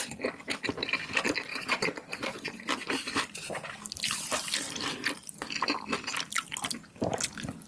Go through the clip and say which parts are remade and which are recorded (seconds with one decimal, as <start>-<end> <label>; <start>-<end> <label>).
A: 0.0-1.5 recorded; 1.5-2.7 remade; 2.7-7.7 recorded